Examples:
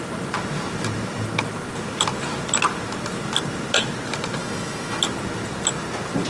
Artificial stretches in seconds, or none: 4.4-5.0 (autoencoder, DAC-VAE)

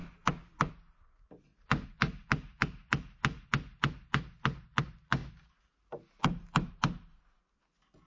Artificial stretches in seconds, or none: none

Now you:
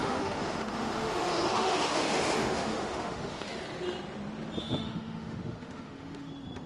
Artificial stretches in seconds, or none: 0.0-3.6 (autoencoder, DAC-VAE); 4.6-6.3

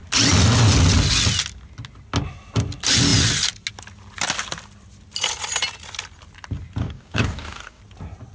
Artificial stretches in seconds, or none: 6.8-7.8 (codec, DAC)

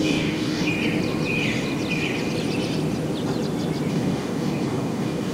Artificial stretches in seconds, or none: 0.0-0.7 (codec, DAC); 3.9-5.3

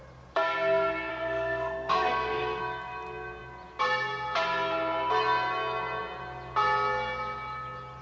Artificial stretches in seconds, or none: 1.1-2.6 (codec, SNAC)

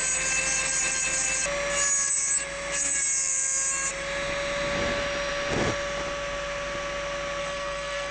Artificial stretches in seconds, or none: 7.4-8.1 (codec, SNAC)